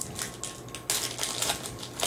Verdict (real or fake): real